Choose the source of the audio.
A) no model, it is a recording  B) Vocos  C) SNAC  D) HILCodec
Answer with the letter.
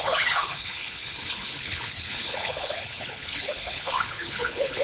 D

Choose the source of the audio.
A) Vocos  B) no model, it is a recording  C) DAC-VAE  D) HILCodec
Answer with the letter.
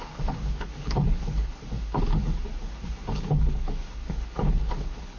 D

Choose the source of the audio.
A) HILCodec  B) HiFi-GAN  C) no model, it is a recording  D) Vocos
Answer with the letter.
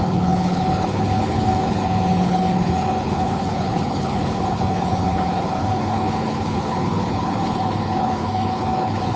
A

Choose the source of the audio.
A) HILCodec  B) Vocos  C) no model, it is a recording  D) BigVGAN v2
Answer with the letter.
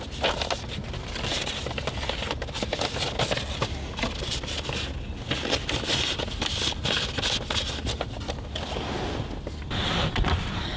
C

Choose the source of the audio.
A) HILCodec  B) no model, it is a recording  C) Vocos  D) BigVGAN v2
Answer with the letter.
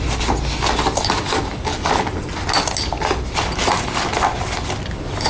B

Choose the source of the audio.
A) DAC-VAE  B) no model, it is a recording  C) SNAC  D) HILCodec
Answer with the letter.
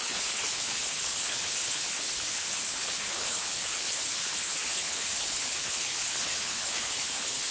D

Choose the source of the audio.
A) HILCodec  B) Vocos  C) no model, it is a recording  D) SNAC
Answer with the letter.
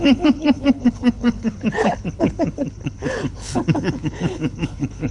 A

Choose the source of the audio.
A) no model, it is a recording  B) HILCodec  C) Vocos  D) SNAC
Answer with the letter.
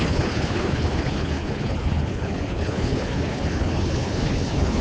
B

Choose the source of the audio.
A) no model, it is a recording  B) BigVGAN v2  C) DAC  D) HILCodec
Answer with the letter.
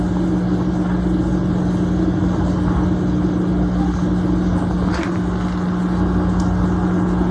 A